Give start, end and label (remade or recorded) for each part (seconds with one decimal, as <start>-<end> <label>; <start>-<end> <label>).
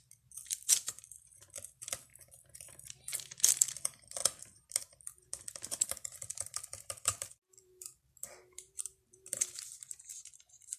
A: 0.0-2.1 remade; 2.1-3.0 recorded; 3.0-4.2 remade; 4.2-4.8 recorded; 4.8-10.8 remade